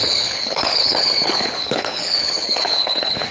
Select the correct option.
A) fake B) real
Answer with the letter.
A